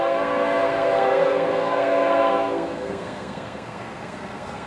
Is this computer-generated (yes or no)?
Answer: yes